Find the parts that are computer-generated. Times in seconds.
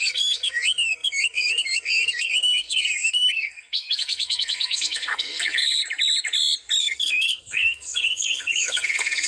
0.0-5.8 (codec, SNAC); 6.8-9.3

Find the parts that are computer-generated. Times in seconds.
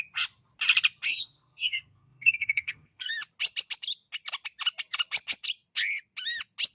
1.1-3.1 (codec, SNAC)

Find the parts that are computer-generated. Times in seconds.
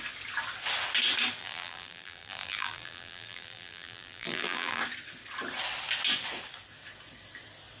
1.4-4.8 (vocoder, BigVGAN v2)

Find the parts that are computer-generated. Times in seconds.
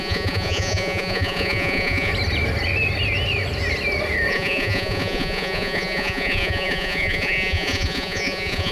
0.0-2.1 (vocoder, Vocos); 4.3-8.7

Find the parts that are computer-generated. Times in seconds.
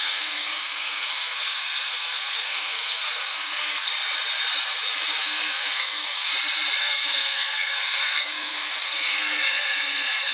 0.0-3.9 (codec, SNAC); 5.2-6.3; 6.8-10.3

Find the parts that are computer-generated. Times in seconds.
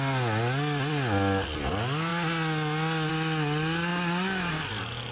none